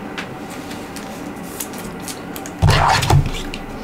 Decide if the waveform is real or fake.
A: real